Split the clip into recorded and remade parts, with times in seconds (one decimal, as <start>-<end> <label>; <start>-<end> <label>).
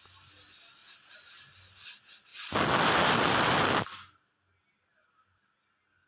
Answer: 0.0-6.1 recorded